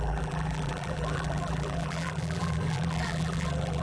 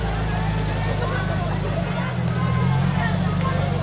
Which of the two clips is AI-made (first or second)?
first